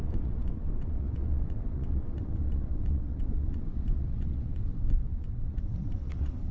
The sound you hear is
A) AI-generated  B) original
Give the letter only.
A